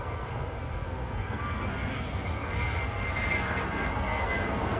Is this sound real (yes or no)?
no